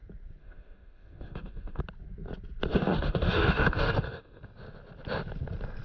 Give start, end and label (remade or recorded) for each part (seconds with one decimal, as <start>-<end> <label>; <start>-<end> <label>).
0.0-0.4 recorded; 0.4-1.8 remade; 1.8-2.7 recorded; 2.7-4.4 remade; 4.4-5.8 recorded